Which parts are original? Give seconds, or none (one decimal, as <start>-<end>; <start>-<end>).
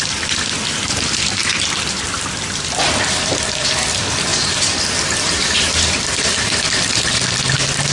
4.3-5.5